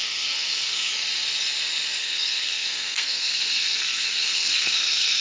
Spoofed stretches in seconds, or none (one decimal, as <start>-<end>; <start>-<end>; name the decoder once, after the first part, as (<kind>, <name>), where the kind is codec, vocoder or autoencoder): 0.0-0.9 (codec, SNAC); 2.0-5.2